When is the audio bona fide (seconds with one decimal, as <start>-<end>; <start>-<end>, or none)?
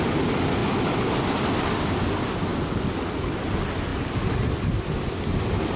0.0-5.8